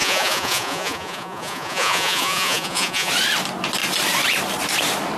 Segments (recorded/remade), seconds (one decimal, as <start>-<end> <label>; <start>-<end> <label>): 0.0-3.1 remade; 3.1-5.2 recorded